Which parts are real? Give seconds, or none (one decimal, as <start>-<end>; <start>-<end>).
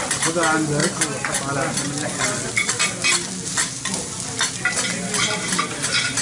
0.0-6.2